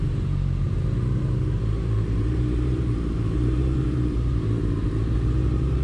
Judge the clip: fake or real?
fake